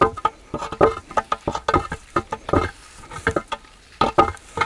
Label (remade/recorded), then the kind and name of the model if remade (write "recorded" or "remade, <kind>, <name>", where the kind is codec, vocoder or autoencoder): recorded